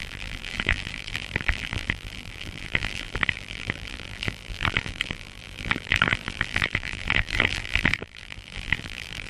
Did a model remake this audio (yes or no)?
yes